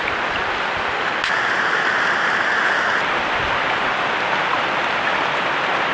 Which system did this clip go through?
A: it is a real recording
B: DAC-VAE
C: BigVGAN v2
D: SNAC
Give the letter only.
A